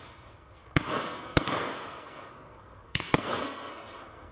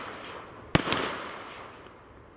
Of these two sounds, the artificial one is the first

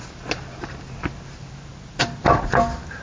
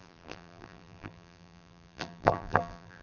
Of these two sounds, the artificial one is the second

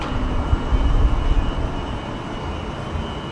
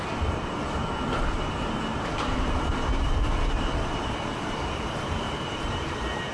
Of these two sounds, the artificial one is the second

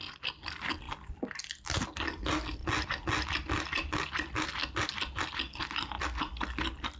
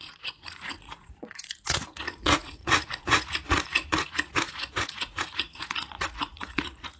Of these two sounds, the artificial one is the second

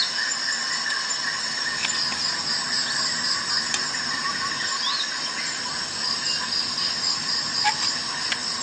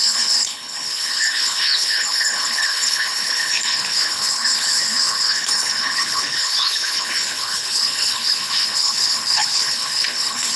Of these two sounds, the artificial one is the second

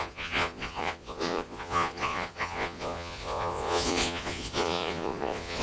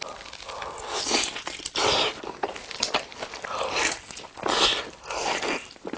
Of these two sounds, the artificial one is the first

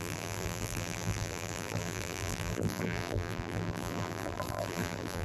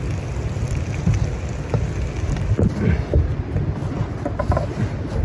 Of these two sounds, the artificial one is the first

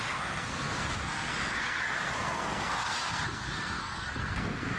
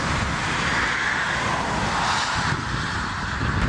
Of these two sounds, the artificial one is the first